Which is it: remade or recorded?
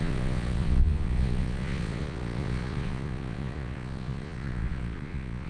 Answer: remade